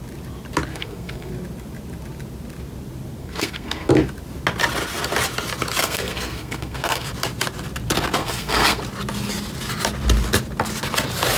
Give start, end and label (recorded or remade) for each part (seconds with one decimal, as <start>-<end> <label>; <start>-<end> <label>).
0.0-0.7 recorded; 0.7-1.3 remade; 1.3-3.2 recorded; 3.2-3.9 remade; 3.9-5.8 recorded; 5.8-7.1 remade; 7.1-8.2 recorded; 8.2-8.8 remade; 8.8-11.4 recorded